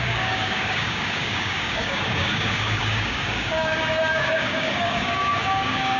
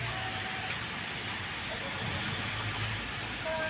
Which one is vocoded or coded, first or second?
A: first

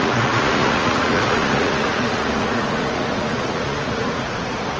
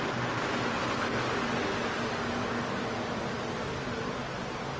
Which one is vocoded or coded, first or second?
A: first